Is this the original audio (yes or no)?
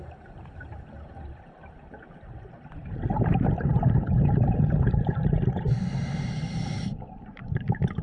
no